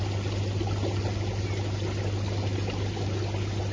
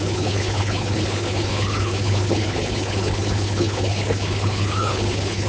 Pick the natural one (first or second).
first